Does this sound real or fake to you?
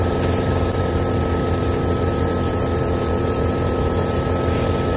real